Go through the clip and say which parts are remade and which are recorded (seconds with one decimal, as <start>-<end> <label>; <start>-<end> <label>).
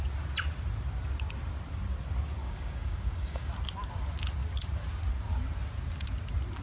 0.0-2.4 recorded; 2.4-3.5 remade; 3.5-6.6 recorded